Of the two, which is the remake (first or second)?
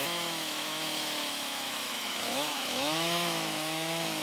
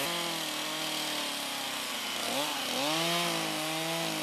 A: first